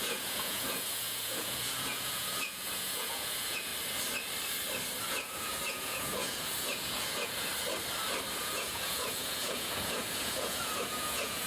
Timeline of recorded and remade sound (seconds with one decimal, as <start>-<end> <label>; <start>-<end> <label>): 0.0-3.7 remade; 3.7-5.0 recorded; 5.0-7.5 remade; 7.5-8.4 recorded; 8.4-11.5 remade